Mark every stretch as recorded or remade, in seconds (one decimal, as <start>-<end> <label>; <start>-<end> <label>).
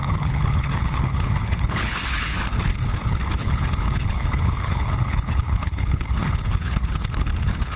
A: 0.0-7.8 remade